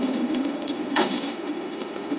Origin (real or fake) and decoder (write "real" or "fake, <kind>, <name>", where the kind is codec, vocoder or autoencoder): fake, autoencoder, DAC-VAE